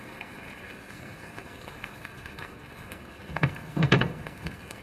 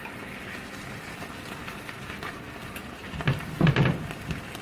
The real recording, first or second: second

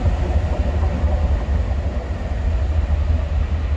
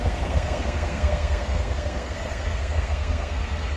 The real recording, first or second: first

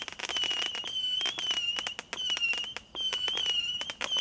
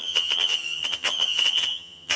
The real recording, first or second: first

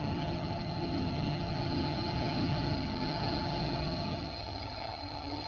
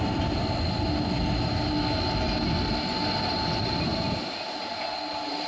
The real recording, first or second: second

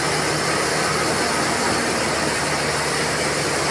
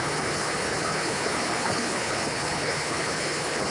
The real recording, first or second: first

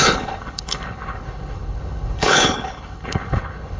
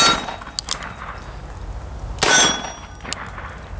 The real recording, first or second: second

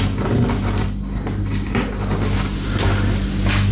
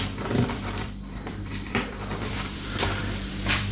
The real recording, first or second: first